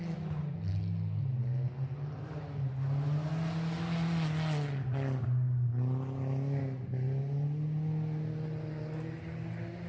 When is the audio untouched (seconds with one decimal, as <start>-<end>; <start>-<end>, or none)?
0.0-9.9